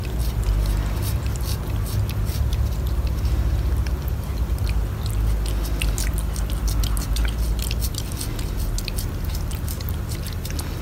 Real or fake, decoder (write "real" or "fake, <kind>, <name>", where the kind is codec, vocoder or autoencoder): real